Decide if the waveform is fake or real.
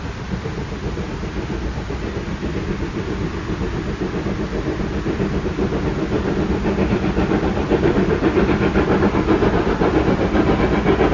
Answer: real